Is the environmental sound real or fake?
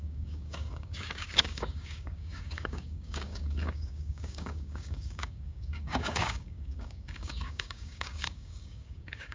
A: fake